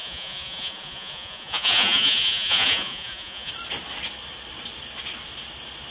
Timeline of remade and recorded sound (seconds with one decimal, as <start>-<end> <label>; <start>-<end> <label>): 0.0-3.5 remade; 3.5-5.9 recorded